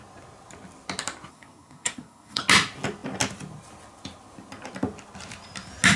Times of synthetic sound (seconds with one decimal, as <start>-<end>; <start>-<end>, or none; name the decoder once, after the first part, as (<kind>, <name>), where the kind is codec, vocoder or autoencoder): 1.3-2.4 (codec, SNAC)